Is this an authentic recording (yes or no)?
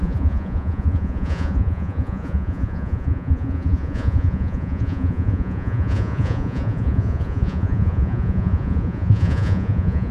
no